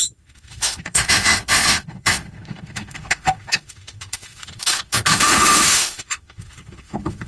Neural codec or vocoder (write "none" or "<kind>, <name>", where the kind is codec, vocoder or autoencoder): autoencoder, DAC-VAE